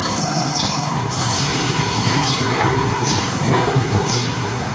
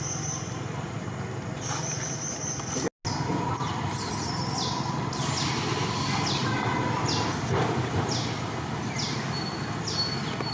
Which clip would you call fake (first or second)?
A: first